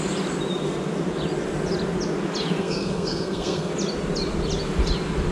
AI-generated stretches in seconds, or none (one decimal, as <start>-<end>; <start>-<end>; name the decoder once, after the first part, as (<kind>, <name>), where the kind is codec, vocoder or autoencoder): 2.6-3.7 (codec, SNAC)